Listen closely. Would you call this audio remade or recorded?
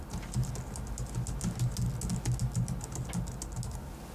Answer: recorded